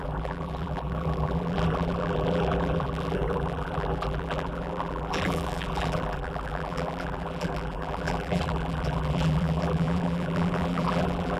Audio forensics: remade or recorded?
remade